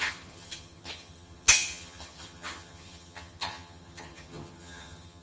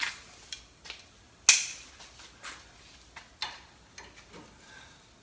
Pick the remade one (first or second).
first